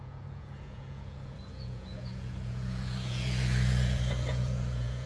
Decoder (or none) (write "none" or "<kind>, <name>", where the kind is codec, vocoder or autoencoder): vocoder, Vocos